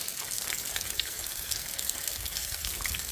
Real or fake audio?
fake